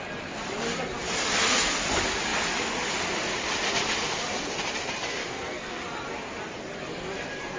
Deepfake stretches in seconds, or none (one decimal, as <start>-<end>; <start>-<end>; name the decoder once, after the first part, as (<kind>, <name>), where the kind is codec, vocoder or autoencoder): 5.2-5.8 (codec, SNAC)